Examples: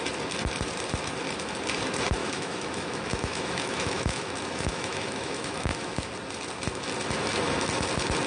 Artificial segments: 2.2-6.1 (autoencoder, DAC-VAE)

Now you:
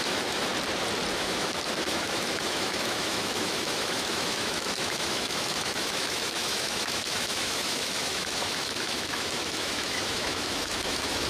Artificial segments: 0.0-0.5 (autoencoder, DAC-VAE); 1.1-11.3

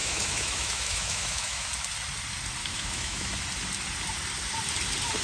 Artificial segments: 0.0-1.7 (autoencoder, DAC-VAE); 2.6-3.3